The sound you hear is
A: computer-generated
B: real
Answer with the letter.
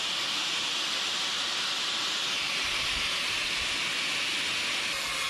B